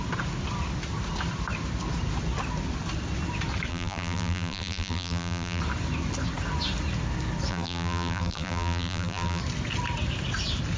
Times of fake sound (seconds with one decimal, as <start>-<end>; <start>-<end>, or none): 3.7-5.6; 7.5-9.4